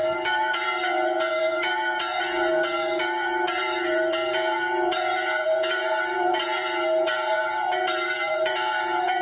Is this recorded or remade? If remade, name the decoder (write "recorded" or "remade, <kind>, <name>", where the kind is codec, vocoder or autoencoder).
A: remade, vocoder, Vocos